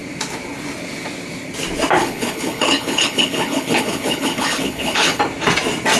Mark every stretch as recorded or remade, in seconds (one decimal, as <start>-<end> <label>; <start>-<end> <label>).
0.0-2.0 recorded; 2.0-5.2 remade; 5.2-6.0 recorded